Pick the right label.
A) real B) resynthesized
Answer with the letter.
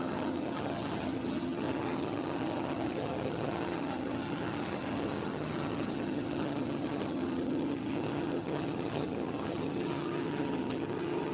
B